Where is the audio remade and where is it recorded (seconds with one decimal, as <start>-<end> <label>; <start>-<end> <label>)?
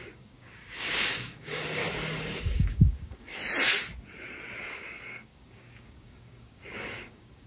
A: 0.0-1.8 remade; 1.8-2.4 recorded; 2.4-3.4 remade; 3.4-4.7 recorded; 4.7-7.5 remade